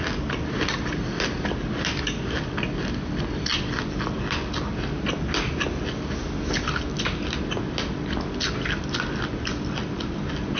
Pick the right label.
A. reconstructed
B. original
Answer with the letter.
B